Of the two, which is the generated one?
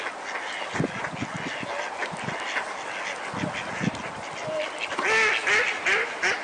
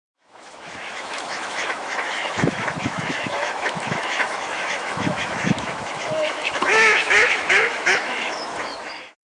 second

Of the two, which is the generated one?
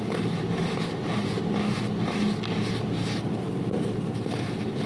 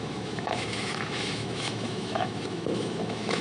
second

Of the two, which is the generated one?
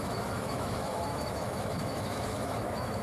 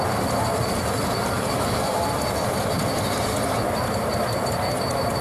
first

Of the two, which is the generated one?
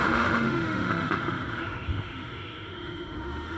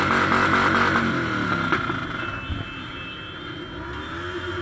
first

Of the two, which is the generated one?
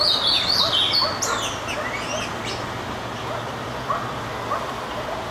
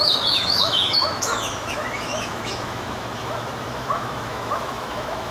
second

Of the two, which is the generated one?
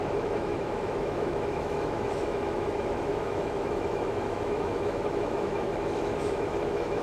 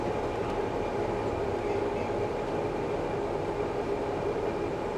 first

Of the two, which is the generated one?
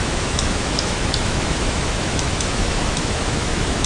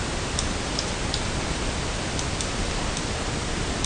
first